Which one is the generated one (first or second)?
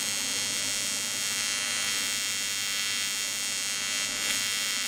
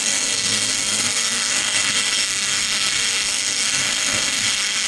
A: second